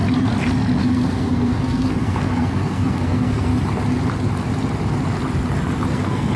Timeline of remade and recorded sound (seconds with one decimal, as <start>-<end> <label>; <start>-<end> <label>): 0.0-0.8 recorded; 0.8-3.5 remade; 3.5-5.9 recorded; 5.9-6.4 remade